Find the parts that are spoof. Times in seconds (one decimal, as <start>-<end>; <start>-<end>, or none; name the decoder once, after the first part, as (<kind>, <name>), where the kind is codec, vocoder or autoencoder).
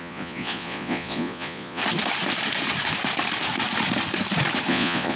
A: 0.0-1.8 (vocoder, Vocos); 4.7-5.2